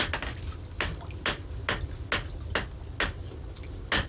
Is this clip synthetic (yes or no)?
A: no